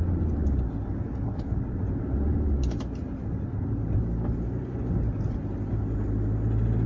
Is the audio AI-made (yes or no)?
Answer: no